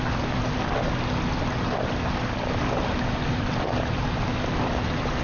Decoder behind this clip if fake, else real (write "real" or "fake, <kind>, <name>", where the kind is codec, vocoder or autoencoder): real